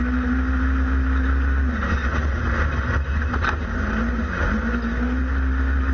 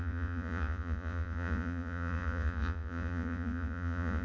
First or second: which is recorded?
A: first